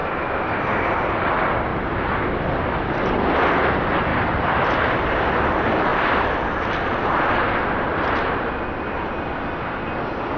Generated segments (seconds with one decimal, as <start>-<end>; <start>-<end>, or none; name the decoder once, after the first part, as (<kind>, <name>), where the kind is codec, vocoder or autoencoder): 0.0-0.6 (vocoder, BigVGAN v2); 1.7-3.2; 4.1-4.7; 5.9-7.0